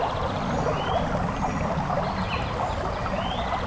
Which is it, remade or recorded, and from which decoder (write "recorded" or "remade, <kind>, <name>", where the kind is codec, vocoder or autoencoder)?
recorded